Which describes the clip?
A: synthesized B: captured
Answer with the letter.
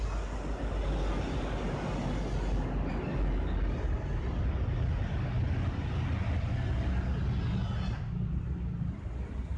B